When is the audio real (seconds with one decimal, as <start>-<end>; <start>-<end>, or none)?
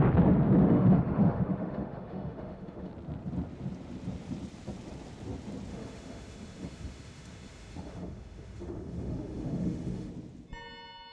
0.0-0.6; 2.9-5.7; 10.1-11.1